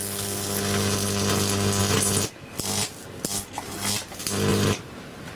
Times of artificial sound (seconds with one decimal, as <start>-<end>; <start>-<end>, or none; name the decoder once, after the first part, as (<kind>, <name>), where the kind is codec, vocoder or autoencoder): 4.5-5.4 (vocoder, BigVGAN v2)

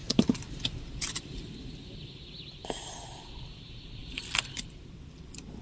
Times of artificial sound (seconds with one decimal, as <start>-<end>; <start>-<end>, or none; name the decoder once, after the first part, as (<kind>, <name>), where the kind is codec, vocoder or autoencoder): 3.4-5.6 (vocoder, BigVGAN v2)

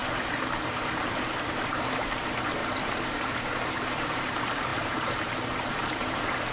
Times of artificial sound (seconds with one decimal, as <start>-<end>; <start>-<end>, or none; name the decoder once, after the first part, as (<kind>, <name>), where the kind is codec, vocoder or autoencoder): 0.0-6.5 (vocoder, BigVGAN v2)